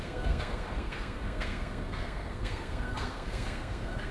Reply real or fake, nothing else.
fake